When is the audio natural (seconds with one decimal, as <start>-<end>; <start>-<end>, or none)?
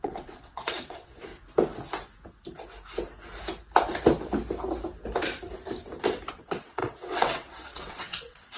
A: 1.3-6.3